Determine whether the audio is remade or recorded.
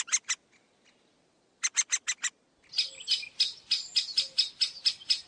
recorded